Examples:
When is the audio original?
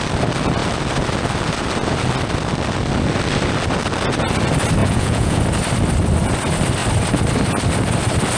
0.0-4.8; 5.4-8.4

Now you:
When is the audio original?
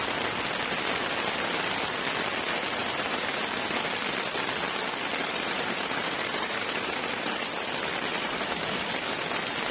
0.0-2.8; 3.3-5.2; 7.3-8.1; 8.9-9.7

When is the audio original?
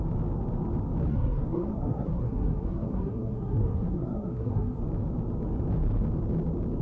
0.0-1.1; 4.8-6.8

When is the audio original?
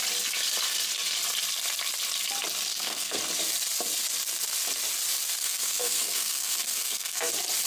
0.0-2.7; 3.2-5.4; 7.3-7.7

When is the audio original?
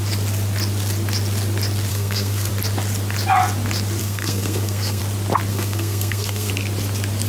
0.0-1.9; 2.5-4.0; 5.0-5.5; 6.5-7.3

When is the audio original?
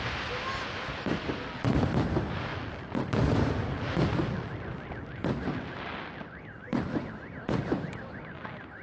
0.0-8.8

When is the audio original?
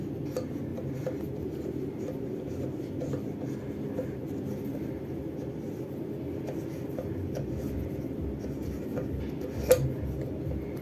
0.0-0.7; 2.0-10.8